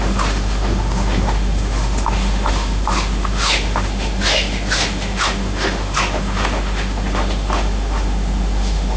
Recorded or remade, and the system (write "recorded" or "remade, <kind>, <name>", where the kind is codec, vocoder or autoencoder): remade, autoencoder, DAC-VAE